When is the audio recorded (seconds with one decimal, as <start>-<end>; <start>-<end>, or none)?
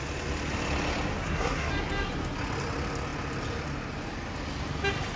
0.0-1.2; 1.7-5.2